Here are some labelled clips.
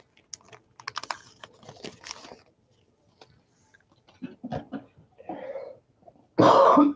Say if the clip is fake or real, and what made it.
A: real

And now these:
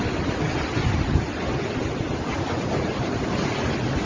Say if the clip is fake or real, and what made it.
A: real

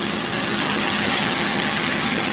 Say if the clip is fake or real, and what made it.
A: fake, vocoder, HiFi-GAN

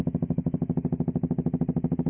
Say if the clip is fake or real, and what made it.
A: real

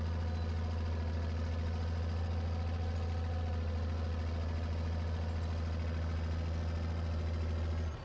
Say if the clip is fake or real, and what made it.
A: real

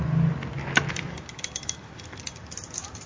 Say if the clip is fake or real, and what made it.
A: real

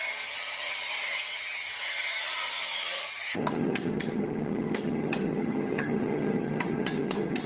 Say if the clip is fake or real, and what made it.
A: fake, vocoder, HiFi-GAN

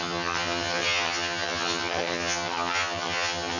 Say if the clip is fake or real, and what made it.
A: fake, vocoder, HiFi-GAN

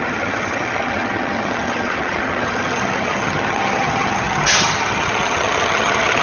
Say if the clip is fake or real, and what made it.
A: fake, vocoder, HiFi-GAN